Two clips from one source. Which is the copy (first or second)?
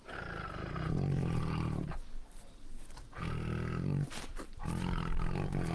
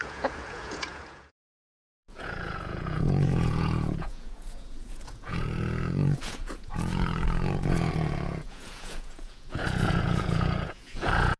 second